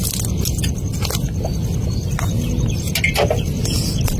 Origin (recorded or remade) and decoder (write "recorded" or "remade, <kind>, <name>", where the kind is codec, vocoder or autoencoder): recorded